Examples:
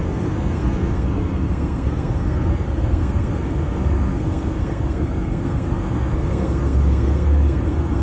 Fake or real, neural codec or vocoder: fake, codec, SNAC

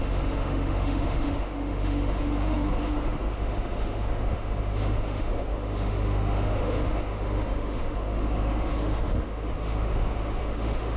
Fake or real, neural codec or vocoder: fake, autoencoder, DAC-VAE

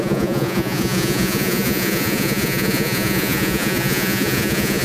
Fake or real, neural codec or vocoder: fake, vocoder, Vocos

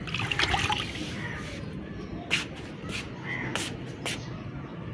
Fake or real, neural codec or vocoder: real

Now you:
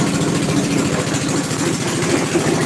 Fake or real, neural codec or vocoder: fake, vocoder, BigVGAN v2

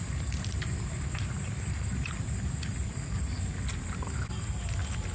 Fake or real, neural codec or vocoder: real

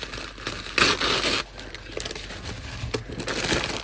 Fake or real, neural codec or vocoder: real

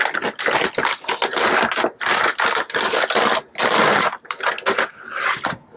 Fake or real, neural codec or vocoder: real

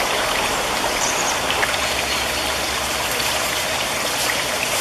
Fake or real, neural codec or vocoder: fake, vocoder, BigVGAN v2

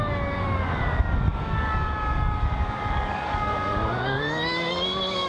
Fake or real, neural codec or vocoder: fake, codec, DAC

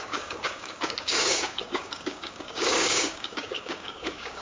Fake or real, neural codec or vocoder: fake, codec, DAC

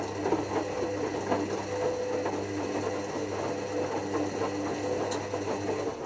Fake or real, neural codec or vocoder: real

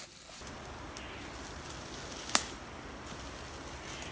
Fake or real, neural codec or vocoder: real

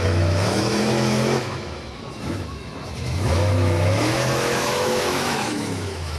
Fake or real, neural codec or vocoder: fake, autoencoder, DAC-VAE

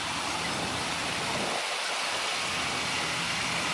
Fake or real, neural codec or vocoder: real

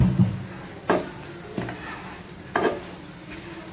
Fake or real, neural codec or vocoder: real